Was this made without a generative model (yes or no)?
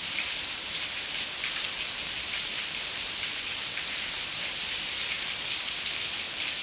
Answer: yes